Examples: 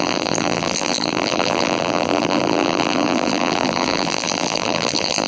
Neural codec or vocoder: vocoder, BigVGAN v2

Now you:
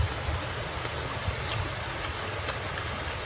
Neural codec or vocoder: none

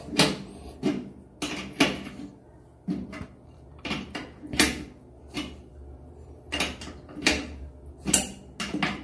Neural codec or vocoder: none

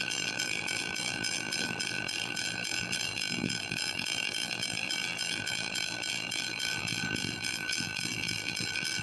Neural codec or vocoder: vocoder, BigVGAN v2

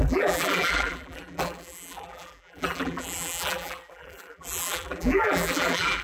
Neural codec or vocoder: vocoder, BigVGAN v2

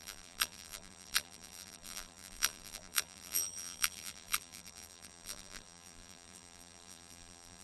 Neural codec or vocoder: vocoder, BigVGAN v2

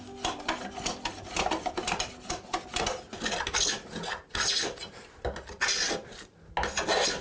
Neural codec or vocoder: none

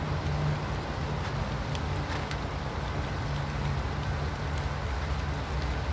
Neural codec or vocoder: none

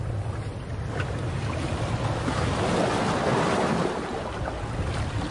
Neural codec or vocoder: none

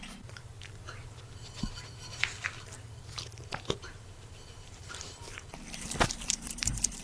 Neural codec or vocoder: vocoder, BigVGAN v2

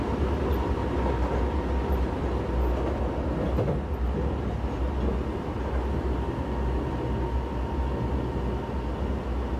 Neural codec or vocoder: none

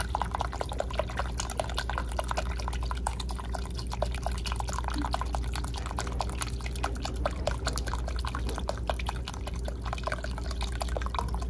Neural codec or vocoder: none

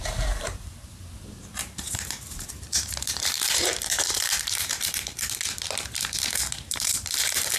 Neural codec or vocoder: vocoder, BigVGAN v2